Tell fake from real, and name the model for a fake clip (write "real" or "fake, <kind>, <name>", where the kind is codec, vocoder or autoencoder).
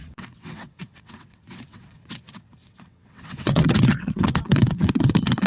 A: fake, vocoder, WaveNeXt